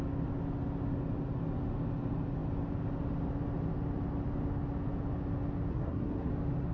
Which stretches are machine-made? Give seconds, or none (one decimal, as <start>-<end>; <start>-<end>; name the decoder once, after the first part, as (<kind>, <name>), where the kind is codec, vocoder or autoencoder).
5.7-6.3 (codec, SNAC)